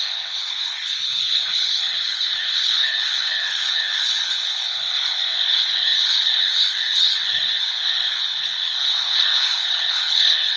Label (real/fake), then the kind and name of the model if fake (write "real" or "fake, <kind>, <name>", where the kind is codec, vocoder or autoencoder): fake, codec, HILCodec